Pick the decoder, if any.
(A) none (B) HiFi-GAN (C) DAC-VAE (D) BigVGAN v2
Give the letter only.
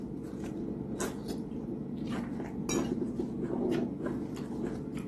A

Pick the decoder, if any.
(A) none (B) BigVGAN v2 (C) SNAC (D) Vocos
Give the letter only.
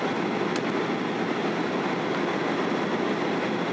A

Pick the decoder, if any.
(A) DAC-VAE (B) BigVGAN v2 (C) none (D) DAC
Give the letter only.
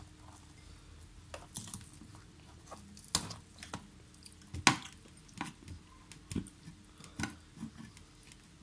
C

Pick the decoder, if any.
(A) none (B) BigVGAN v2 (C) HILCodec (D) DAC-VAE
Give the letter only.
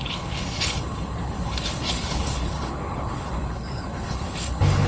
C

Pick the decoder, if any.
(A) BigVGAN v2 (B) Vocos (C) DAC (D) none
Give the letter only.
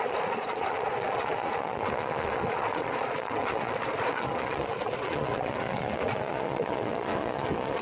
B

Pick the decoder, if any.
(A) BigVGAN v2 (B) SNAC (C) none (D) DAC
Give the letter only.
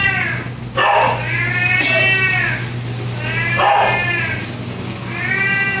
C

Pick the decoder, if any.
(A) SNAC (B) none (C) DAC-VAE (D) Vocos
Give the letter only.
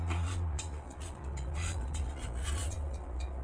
D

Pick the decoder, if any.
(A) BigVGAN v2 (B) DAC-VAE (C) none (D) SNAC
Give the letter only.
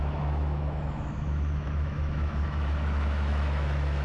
B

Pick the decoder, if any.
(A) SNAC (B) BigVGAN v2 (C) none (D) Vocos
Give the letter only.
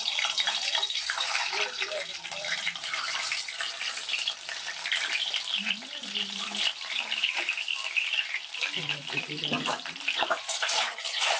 B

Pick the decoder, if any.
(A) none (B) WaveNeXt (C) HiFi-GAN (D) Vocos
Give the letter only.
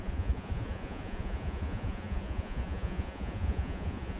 D